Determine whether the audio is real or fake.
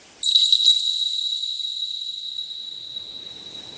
real